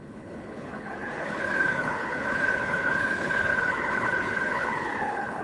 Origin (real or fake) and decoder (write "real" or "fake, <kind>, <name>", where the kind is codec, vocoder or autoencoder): fake, codec, HILCodec